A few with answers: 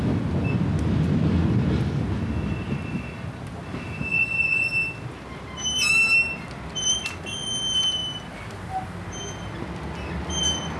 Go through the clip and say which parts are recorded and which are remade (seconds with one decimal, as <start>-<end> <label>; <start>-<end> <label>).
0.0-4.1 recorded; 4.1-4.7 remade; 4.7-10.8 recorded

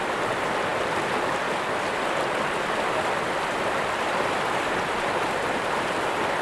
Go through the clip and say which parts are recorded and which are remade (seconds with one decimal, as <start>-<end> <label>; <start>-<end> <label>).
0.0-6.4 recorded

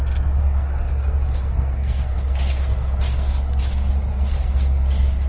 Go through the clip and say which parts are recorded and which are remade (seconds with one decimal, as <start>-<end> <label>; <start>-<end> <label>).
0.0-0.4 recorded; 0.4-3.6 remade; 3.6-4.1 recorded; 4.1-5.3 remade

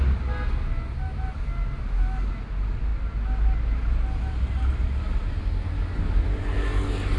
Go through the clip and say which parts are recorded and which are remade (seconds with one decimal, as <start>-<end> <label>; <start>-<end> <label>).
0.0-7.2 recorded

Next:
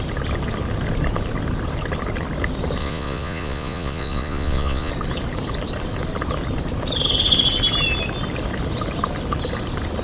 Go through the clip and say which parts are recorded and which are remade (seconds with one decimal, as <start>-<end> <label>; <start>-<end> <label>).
0.0-2.8 recorded; 2.8-4.9 remade; 4.9-10.0 recorded

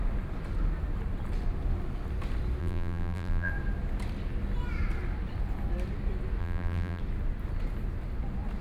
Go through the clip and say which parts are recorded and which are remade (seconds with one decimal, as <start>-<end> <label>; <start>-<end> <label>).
0.0-2.6 recorded; 2.6-3.5 remade; 3.5-6.4 recorded; 6.4-7.0 remade; 7.0-8.6 recorded